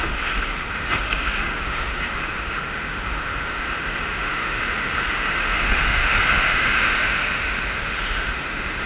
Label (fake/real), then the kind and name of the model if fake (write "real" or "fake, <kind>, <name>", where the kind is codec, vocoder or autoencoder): fake, autoencoder, DAC-VAE